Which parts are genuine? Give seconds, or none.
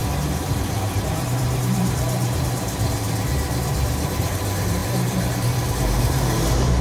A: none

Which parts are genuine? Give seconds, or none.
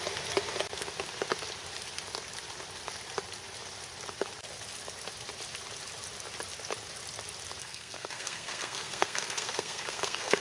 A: 0.0-7.6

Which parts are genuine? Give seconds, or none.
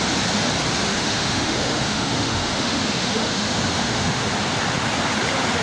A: 0.0-0.9; 4.3-5.6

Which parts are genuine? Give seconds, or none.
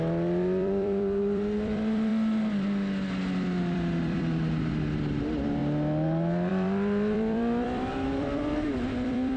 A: 2.1-3.6; 5.6-6.5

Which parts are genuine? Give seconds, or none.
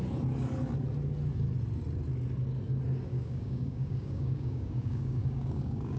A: 0.0-3.1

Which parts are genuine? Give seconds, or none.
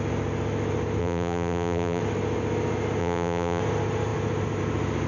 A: 0.0-1.0; 2.0-3.0; 3.6-5.1